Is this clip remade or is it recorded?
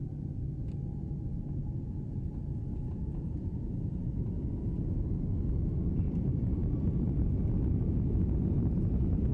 recorded